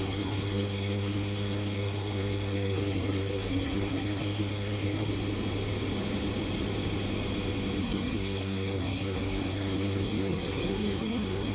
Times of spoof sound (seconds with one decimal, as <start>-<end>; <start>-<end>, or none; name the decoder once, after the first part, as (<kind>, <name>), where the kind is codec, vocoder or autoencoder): 0.0-5.1 (codec, SNAC); 7.8-11.5